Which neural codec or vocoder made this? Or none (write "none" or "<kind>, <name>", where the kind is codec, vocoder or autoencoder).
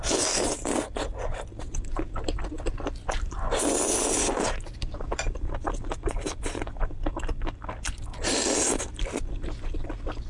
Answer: none